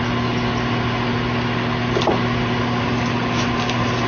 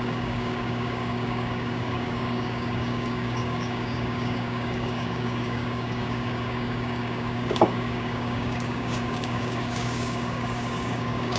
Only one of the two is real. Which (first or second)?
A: first